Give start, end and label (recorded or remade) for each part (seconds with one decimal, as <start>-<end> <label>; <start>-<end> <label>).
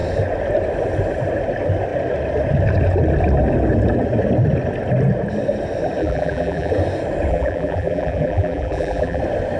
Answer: 0.0-6.0 recorded; 6.0-6.7 remade; 6.7-7.3 recorded; 7.3-9.2 remade; 9.2-9.6 recorded